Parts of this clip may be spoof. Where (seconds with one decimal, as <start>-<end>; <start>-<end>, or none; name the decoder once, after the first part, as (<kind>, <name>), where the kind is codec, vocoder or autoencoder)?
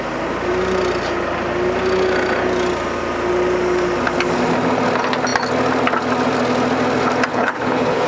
7.3-8.1 (codec, HILCodec)